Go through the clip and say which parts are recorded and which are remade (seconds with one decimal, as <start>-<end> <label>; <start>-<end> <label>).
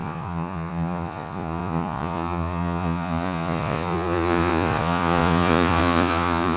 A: 0.0-6.6 remade